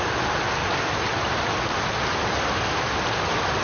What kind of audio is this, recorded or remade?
recorded